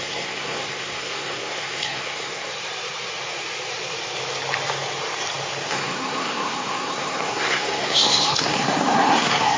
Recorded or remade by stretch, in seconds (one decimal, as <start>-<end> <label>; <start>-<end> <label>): 0.0-2.5 remade; 2.5-5.7 recorded; 5.7-9.6 remade